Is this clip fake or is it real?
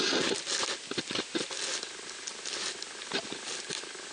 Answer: real